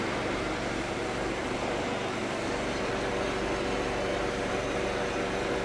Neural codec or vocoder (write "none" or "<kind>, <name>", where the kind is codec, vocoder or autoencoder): vocoder, BigVGAN v2